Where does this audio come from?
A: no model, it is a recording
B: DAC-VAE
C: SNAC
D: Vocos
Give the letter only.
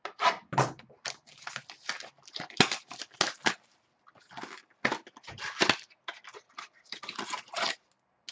A